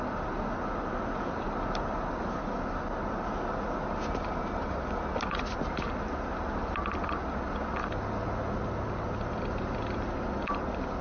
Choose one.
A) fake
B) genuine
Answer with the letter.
B